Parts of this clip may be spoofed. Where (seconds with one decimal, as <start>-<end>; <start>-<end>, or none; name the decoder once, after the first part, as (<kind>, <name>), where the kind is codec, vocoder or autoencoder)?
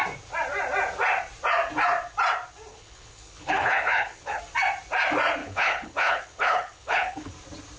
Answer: 2.7-4.4 (codec, HILCodec); 5.4-7.3